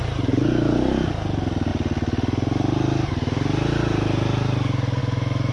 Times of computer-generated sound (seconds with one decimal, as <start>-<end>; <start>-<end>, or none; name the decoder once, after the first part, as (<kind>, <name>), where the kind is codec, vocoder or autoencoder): none